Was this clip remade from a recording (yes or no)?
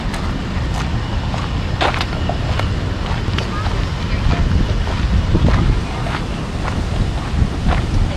no